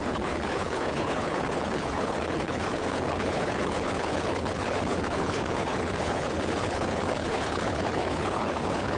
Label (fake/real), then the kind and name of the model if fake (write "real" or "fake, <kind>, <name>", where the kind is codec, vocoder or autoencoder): fake, codec, HILCodec